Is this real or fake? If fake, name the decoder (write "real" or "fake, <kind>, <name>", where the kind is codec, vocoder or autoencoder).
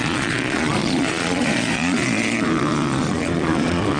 fake, vocoder, Vocos